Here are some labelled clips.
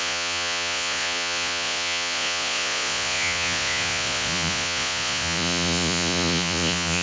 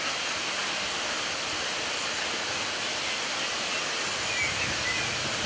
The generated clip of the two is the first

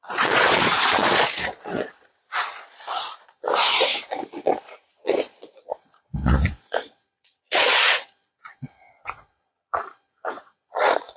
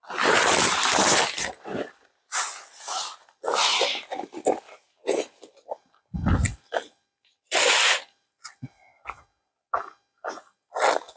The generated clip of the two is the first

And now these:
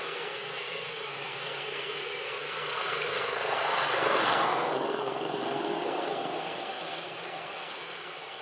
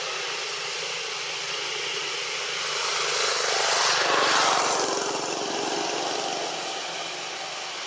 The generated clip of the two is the first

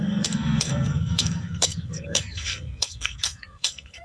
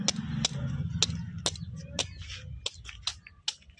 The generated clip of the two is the first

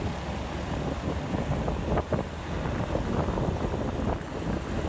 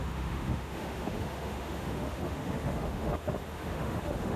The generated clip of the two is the second